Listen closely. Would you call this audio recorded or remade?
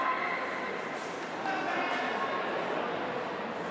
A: recorded